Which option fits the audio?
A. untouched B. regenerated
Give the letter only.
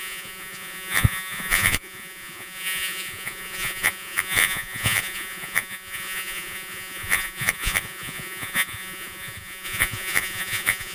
B